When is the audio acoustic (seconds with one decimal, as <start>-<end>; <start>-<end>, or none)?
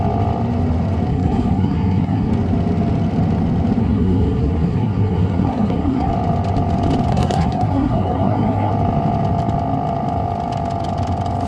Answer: 0.0-1.1; 2.3-3.8; 6.1-7.1; 8.7-11.5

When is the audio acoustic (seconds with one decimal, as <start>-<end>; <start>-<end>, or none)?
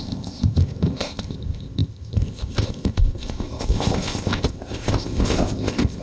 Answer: none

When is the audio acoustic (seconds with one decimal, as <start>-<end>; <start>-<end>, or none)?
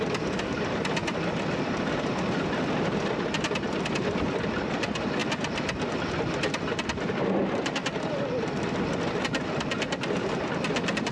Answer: 0.0-11.1